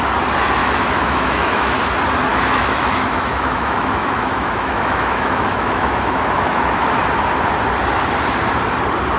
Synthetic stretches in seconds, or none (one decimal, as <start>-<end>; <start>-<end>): 0.6-1.8; 2.3-6.9